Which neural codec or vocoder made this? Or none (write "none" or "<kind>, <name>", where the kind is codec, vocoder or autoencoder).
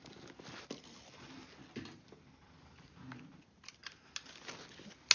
none